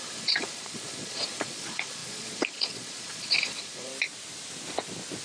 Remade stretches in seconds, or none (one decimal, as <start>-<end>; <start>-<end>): 0.0-3.9